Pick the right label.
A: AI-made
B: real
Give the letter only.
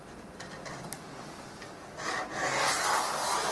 B